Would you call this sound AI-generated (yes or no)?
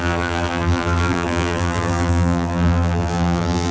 yes